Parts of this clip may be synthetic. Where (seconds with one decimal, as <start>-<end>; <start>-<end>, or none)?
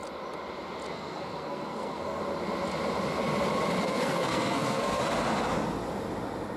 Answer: 0.9-2.2; 3.8-5.0